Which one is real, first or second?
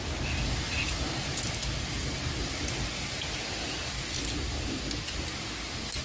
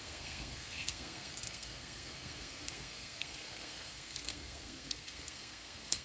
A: first